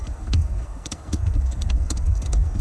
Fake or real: fake